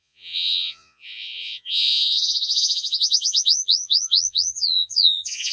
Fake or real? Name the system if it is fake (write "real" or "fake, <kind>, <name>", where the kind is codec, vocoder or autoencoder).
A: fake, vocoder, Vocos